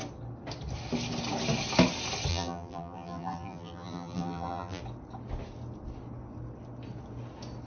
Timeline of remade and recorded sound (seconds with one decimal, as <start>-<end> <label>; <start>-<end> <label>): 0.0-2.3 recorded; 2.3-4.8 remade; 4.8-7.7 recorded